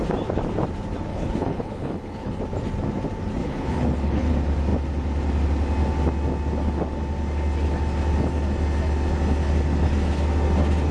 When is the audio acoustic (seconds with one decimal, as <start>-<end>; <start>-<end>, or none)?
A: 0.0-1.1; 2.4-3.4; 4.3-10.9